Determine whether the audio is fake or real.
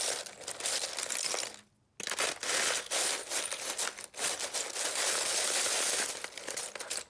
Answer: real